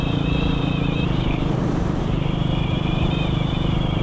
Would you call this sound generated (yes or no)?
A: yes